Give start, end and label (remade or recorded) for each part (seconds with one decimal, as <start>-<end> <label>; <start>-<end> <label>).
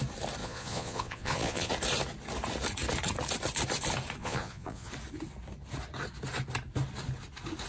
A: 0.0-0.4 recorded; 0.4-1.7 remade; 1.7-4.2 recorded; 4.2-4.9 remade; 4.9-7.7 recorded